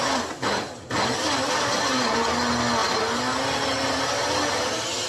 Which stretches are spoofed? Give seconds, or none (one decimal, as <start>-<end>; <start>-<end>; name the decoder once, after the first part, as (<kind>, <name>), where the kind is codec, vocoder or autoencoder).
none